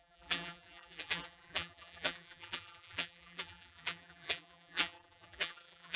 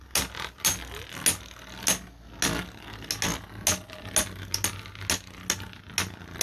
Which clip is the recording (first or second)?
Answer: second